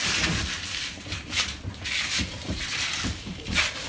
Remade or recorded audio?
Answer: recorded